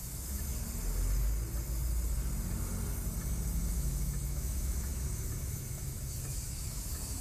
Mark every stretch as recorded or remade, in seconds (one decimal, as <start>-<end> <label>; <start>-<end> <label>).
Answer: 0.0-0.5 remade; 0.5-3.7 recorded; 3.7-7.2 remade